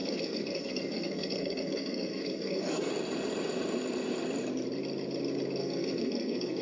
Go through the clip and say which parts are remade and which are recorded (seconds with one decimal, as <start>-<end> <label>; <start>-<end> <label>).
0.0-2.9 remade; 2.9-5.6 recorded; 5.6-6.6 remade